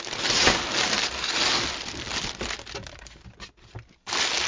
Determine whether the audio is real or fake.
real